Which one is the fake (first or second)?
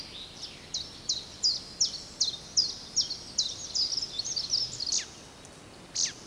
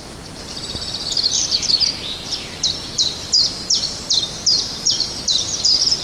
second